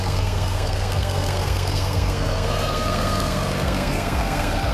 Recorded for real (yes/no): no